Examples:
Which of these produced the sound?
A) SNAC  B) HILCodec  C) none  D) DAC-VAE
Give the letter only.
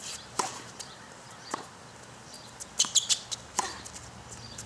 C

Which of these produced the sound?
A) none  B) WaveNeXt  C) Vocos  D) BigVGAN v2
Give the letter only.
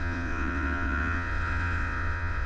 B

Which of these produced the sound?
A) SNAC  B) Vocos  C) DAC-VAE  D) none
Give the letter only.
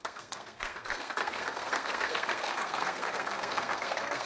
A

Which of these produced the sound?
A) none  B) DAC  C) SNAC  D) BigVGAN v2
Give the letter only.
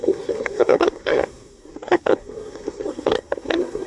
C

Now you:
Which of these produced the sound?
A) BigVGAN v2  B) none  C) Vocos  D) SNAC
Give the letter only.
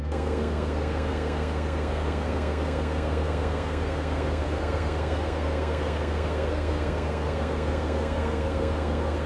D